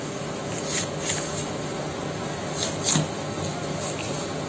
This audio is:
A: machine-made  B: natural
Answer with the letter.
B